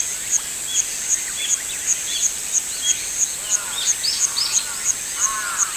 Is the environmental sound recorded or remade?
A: recorded